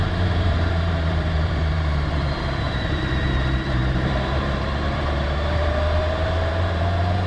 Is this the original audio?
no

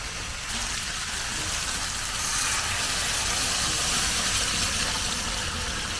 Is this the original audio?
yes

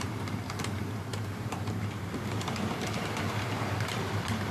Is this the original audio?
no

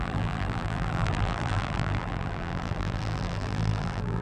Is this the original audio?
no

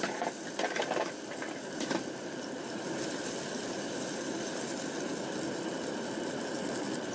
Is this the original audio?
no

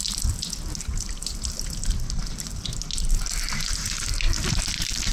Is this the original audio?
yes